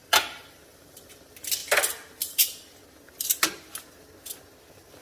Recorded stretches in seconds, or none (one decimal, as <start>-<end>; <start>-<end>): 1.1-5.0